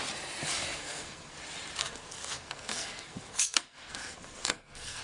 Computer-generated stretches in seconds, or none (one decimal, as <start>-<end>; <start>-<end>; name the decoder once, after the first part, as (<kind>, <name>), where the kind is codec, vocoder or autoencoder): 0.7-1.3 (codec, SNAC); 1.8-5.0